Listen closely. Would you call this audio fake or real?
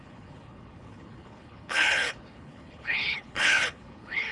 fake